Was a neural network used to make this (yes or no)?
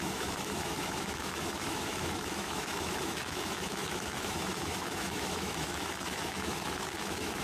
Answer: yes